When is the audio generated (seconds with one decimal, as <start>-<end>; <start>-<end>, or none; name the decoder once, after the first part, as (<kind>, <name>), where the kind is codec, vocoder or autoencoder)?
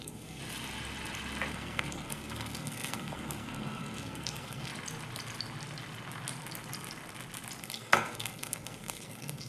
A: 0.0-0.4 (codec, SNAC); 1.5-4.7; 7.6-9.5